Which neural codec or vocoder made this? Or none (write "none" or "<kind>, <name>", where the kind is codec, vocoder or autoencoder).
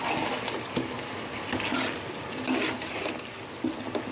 none